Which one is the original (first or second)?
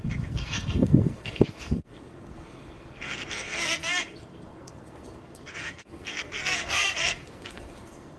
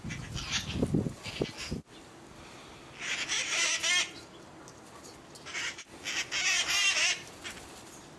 second